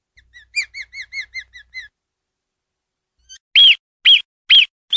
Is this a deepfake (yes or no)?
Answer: no